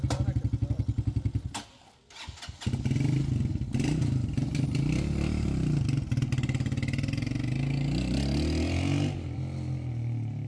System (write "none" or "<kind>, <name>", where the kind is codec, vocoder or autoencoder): none